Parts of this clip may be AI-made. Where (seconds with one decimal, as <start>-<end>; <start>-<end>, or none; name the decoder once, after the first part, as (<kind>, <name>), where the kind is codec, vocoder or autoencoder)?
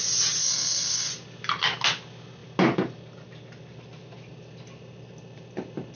0.4-1.1 (codec, SNAC)